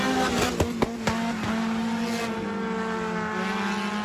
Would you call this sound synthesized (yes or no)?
no